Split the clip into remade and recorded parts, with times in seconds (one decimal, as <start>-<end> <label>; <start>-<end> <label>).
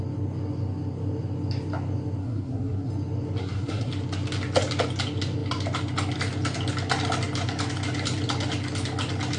0.0-2.2 recorded; 2.2-2.9 remade; 2.9-3.4 recorded; 3.4-3.9 remade; 3.9-9.4 recorded